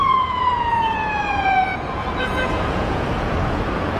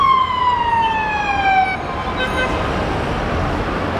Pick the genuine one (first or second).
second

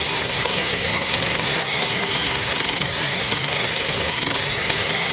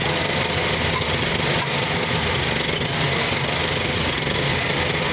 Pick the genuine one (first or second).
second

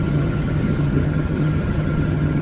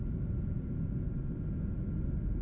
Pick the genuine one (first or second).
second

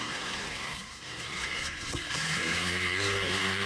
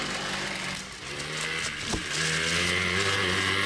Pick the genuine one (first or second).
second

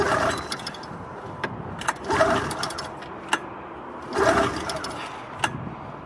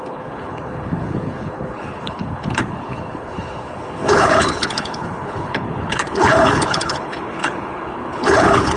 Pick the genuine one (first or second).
first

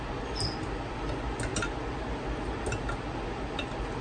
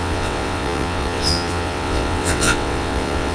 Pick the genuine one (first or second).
first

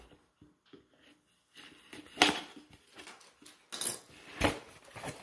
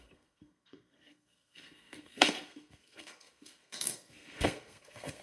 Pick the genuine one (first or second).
first